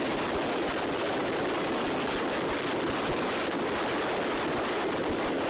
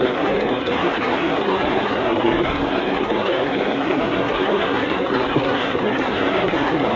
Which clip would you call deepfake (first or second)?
second